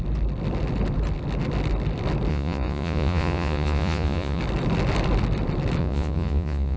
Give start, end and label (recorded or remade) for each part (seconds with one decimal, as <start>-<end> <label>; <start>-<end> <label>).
0.0-2.3 recorded; 2.3-4.4 remade; 4.4-5.8 recorded; 5.8-6.8 remade

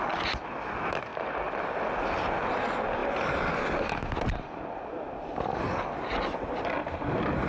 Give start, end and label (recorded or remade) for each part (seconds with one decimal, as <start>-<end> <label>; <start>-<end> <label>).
0.0-7.5 recorded

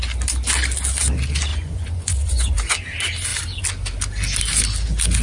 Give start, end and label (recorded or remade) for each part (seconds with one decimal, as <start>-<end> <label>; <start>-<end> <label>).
0.0-1.5 recorded; 1.5-2.7 remade; 2.7-5.2 recorded

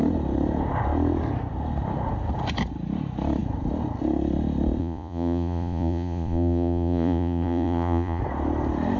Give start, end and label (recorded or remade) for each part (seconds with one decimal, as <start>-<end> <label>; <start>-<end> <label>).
0.0-4.8 recorded; 4.8-8.2 remade; 8.2-9.0 recorded

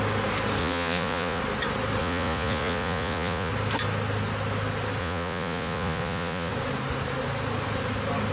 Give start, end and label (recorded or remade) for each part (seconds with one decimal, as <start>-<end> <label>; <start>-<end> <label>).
0.0-0.6 recorded; 0.6-1.4 remade; 1.4-2.0 recorded; 2.0-3.5 remade; 3.5-5.0 recorded; 5.0-6.5 remade; 6.5-8.3 recorded

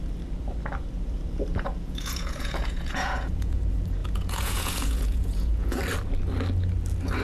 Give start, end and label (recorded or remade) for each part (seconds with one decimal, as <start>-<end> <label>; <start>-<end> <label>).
0.0-1.5 recorded; 1.5-3.6 remade; 3.6-4.0 recorded; 4.0-5.8 remade; 5.8-7.2 recorded

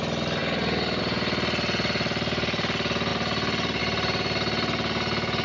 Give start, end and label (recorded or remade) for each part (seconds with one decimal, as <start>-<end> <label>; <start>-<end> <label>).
0.0-5.4 recorded

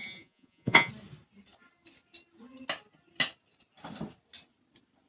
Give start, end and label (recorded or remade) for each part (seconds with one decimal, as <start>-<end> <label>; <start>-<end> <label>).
0.0-0.9 remade; 0.9-5.1 recorded